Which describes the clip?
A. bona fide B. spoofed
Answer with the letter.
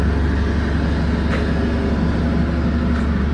A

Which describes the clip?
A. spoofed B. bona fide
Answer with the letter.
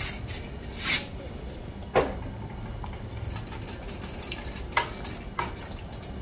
B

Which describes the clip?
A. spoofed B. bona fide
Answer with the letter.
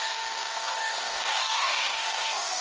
A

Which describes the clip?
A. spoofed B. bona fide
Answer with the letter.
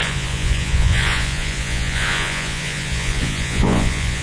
A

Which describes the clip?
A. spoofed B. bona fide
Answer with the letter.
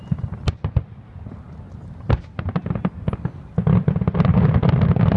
B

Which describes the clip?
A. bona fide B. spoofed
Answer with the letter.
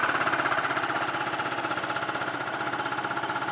A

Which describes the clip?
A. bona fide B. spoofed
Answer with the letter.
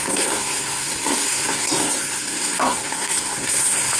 B